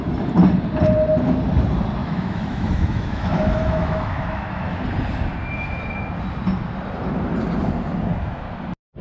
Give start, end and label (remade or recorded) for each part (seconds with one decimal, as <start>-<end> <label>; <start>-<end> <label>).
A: 0.0-2.0 recorded; 2.0-4.8 remade; 4.8-9.0 recorded